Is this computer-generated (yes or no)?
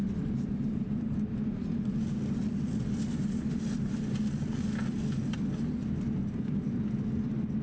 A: no